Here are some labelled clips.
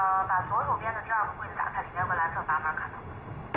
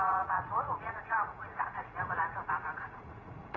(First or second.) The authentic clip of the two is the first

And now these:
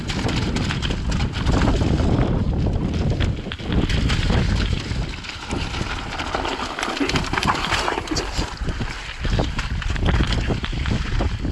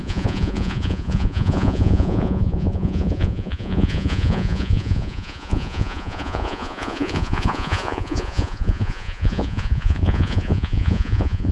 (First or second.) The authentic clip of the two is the first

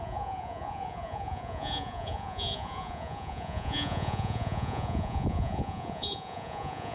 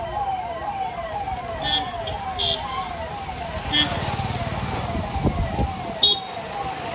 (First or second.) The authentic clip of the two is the second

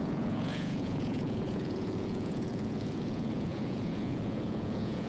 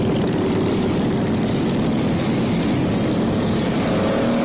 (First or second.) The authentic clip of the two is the second